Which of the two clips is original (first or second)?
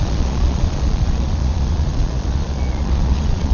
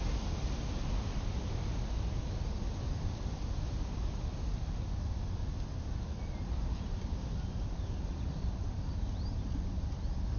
second